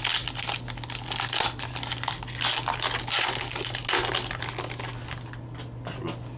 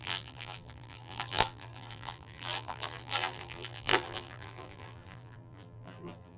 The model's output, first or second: second